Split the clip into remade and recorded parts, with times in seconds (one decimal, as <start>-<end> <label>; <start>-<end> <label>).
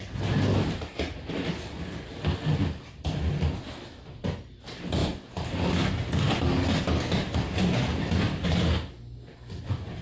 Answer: 0.0-10.0 recorded